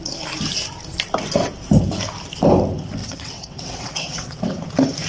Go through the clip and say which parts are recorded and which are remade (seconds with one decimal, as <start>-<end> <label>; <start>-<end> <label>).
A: 0.0-3.0 recorded; 3.0-4.6 remade; 4.6-5.1 recorded